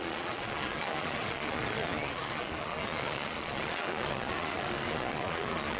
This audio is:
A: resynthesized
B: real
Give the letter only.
A